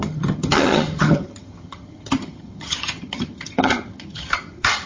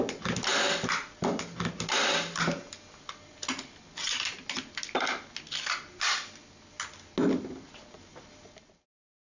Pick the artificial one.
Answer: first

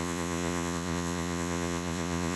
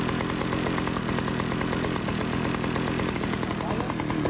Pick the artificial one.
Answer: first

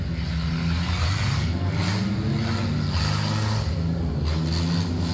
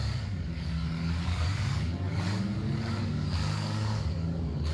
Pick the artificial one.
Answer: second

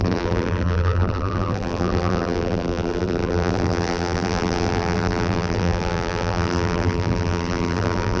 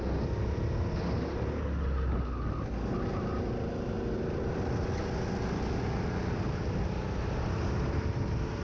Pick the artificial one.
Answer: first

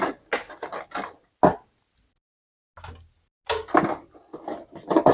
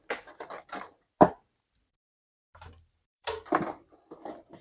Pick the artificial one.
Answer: second